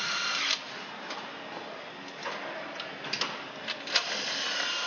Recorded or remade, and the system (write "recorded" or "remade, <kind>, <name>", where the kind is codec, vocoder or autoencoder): recorded